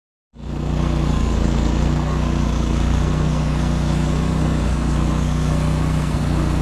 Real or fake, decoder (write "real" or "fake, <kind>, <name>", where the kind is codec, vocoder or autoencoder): fake, codec, SNAC